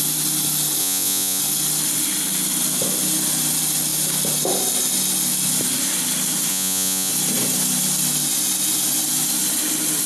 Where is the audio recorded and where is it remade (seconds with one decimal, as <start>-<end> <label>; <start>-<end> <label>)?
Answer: 0.0-0.8 recorded; 0.8-1.4 remade; 1.4-6.5 recorded; 6.5-7.1 remade; 7.1-10.1 recorded